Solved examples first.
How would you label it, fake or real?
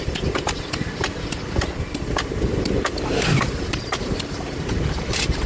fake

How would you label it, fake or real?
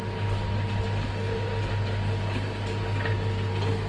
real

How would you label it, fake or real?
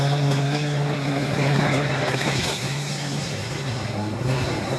fake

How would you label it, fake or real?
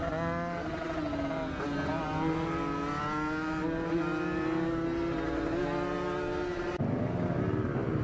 real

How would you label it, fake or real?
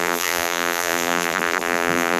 fake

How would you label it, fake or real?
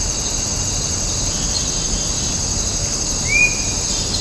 real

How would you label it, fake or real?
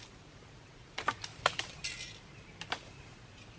real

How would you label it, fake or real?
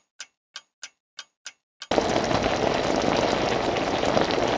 real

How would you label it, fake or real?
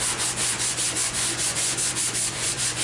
fake